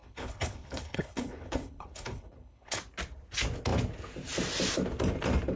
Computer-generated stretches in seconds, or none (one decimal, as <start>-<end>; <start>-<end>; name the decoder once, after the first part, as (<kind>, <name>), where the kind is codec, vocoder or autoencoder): 0.0-2.8 (codec, HILCodec)